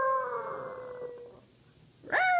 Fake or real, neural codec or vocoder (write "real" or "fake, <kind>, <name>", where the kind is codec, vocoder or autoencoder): real